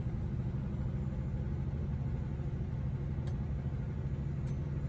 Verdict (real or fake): real